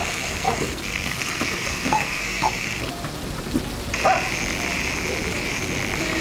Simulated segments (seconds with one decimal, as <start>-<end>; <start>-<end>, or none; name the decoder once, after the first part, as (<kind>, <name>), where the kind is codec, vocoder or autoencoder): 0.0-2.9 (codec, SNAC)